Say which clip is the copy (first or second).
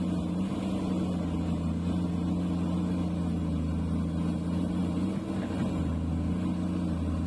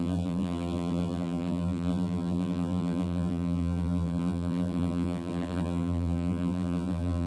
second